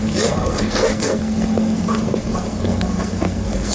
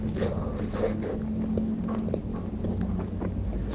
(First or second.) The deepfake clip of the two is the first